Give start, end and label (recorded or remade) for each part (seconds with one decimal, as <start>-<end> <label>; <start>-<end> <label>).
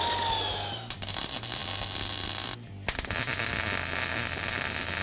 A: 0.0-5.0 recorded